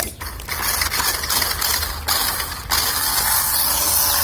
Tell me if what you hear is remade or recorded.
recorded